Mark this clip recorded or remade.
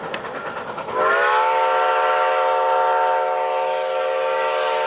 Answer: recorded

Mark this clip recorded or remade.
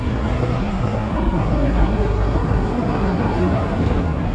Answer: remade